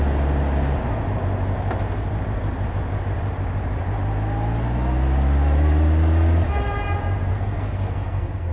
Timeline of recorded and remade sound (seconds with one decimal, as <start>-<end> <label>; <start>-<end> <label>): 0.0-7.3 recorded; 7.3-8.5 remade